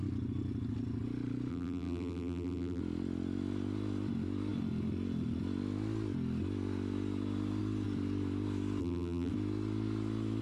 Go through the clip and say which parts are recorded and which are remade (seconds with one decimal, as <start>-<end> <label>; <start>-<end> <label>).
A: 0.0-1.5 recorded; 1.5-2.8 remade; 2.8-8.8 recorded; 8.8-9.3 remade; 9.3-10.4 recorded

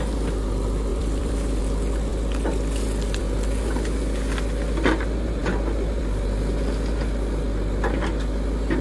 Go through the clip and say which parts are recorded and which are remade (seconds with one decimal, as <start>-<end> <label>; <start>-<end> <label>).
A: 0.0-0.9 recorded; 0.9-1.6 remade; 1.6-8.8 recorded

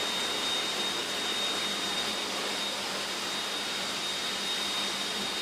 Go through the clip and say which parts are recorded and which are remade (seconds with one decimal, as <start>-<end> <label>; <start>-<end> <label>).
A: 0.0-5.4 remade

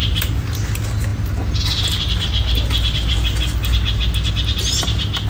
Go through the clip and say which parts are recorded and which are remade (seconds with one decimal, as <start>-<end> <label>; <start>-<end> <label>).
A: 0.0-5.3 recorded

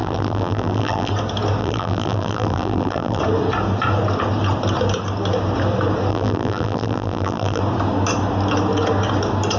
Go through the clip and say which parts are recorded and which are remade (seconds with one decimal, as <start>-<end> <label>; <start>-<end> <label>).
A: 0.0-1.1 remade; 1.1-1.6 recorded; 1.6-3.2 remade; 3.2-6.1 recorded; 6.1-7.6 remade; 7.6-9.6 recorded

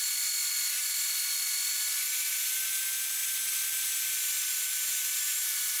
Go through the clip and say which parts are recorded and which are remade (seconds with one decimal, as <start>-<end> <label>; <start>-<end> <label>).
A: 0.0-4.9 recorded; 4.9-5.8 remade

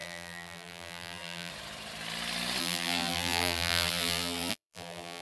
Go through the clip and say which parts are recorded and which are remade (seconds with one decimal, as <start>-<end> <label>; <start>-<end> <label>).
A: 0.0-1.5 remade; 1.5-2.6 recorded; 2.6-5.2 remade

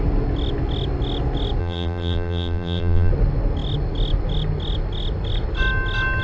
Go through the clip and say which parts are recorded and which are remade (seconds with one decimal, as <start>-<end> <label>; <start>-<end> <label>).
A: 0.0-1.6 recorded; 1.6-3.1 remade; 3.1-6.2 recorded